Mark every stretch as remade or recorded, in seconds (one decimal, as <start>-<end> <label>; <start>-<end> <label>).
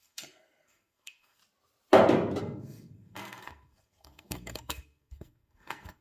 0.0-1.4 remade; 1.4-2.4 recorded; 2.4-6.0 remade